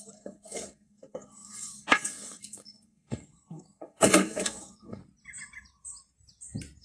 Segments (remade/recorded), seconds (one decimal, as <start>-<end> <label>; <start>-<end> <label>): 0.0-5.0 remade; 5.0-6.8 recorded